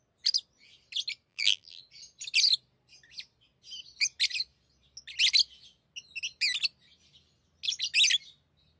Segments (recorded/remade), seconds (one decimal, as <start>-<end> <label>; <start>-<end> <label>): 0.0-1.3 recorded; 1.3-1.8 remade; 1.8-8.8 recorded